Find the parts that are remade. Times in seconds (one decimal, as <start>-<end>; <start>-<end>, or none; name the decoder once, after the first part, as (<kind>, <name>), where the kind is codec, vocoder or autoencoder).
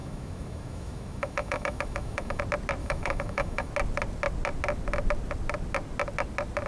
0.0-2.4 (autoencoder, DAC-VAE); 2.8-3.7